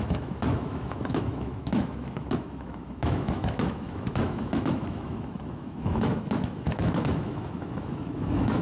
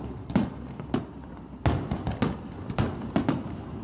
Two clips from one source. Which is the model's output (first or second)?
first